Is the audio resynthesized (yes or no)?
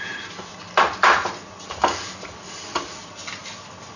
no